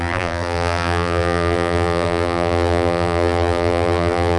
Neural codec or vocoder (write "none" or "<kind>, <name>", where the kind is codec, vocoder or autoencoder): vocoder, BigVGAN v2